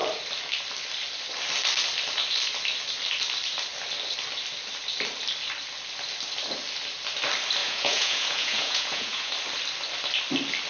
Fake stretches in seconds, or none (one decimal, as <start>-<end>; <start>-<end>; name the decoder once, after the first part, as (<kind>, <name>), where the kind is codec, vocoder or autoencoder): 7.6-9.3 (vocoder, Vocos)

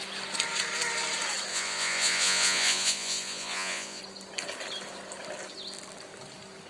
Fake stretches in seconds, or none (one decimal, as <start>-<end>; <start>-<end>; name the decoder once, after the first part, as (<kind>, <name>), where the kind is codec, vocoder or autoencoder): 1.5-4.0 (vocoder, Vocos)

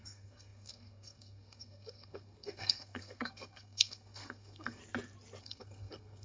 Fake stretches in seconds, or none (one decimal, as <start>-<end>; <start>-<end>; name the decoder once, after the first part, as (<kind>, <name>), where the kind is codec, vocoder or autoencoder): 0.0-4.8 (codec, SNAC); 5.4-6.2

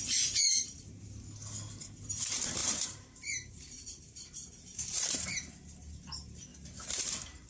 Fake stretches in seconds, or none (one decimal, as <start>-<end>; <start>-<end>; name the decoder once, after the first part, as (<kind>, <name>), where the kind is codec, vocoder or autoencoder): 2.6-5.3 (vocoder, BigVGAN v2); 6.5-7.0

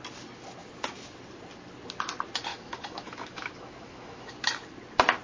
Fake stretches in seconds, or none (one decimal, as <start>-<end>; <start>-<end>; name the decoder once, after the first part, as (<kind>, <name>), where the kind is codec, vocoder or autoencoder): 2.5-4.3 (autoencoder, DAC-VAE)

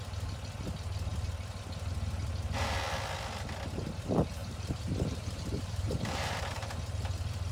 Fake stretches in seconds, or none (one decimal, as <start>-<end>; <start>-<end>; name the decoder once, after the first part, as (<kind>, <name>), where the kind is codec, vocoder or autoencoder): 4.4-7.5 (vocoder, BigVGAN v2)